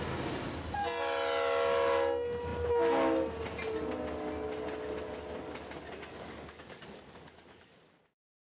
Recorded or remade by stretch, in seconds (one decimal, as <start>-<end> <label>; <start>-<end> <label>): 0.0-6.1 recorded; 6.1-8.0 remade; 8.0-8.6 recorded